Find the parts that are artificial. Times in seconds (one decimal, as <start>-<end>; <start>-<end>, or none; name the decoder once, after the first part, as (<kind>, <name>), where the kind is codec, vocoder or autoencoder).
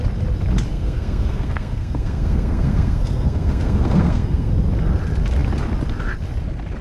0.7-4.5 (codec, SNAC)